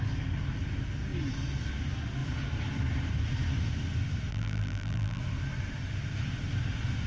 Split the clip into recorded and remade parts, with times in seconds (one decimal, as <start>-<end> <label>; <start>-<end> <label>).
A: 0.0-4.3 recorded; 4.3-5.2 remade; 5.2-7.1 recorded